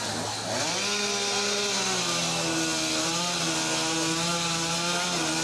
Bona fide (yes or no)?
yes